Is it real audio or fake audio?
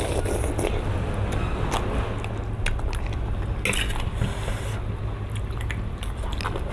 real